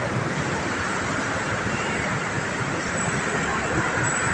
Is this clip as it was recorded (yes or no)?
yes